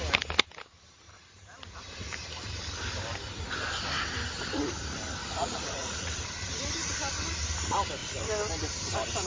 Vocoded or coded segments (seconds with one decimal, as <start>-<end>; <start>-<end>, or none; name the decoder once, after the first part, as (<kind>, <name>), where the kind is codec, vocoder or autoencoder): 5.2-6.1 (vocoder, Vocos)